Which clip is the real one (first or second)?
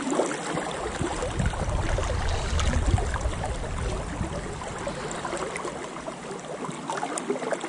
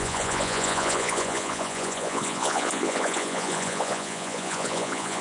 first